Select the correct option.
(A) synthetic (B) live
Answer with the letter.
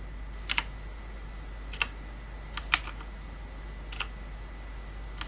B